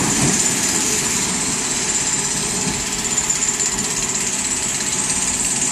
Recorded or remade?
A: recorded